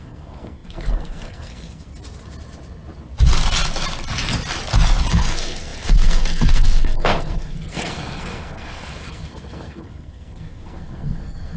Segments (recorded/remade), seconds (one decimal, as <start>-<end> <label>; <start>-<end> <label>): 0.0-1.9 remade; 1.9-5.1 recorded; 5.1-11.6 remade